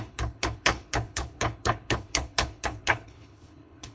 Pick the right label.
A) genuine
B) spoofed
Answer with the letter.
B